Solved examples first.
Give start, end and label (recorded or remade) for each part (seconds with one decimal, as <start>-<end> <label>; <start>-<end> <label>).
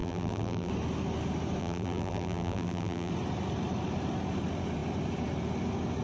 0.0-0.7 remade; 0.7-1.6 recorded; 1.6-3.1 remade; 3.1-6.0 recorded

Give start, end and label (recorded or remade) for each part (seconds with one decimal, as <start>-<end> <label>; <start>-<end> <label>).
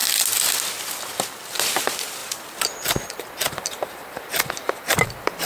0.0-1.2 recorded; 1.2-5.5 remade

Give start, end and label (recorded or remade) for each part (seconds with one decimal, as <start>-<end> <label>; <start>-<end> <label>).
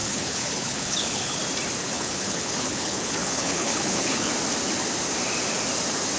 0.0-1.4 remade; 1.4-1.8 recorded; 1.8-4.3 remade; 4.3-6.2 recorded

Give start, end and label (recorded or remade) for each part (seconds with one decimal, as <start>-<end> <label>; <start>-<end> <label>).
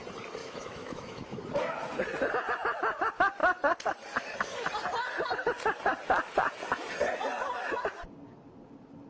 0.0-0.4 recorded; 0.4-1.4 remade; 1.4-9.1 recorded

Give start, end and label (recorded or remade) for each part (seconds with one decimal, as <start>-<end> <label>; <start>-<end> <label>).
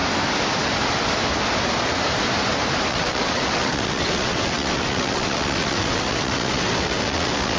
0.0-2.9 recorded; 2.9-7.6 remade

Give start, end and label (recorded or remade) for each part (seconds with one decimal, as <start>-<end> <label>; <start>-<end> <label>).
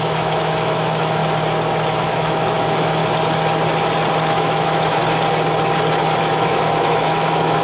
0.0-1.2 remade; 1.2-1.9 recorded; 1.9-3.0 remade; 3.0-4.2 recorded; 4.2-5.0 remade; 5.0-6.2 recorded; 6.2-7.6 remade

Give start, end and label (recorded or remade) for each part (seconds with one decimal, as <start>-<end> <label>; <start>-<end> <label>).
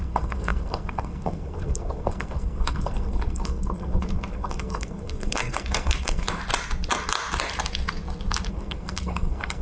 0.0-6.4 remade; 6.4-8.5 recorded; 8.5-9.6 remade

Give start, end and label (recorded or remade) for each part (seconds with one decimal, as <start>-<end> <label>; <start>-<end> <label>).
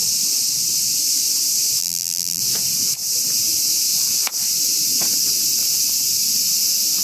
0.0-1.8 recorded; 1.8-2.4 remade; 2.4-7.0 recorded